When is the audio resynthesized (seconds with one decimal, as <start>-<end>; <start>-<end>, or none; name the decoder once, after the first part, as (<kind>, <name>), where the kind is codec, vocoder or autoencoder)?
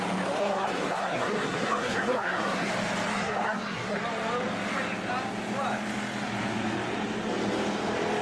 0.4-2.7 (codec, SNAC); 3.1-4.0